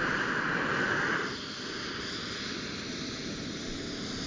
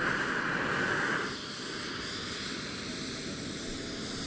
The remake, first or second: first